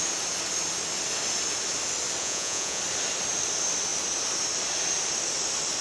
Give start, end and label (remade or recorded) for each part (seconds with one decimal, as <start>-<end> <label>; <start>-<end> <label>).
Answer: 0.0-2.2 recorded; 2.2-2.8 remade; 2.8-5.8 recorded